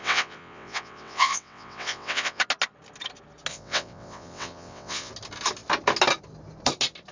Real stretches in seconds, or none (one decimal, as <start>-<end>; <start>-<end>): 2.4-3.5; 5.1-7.1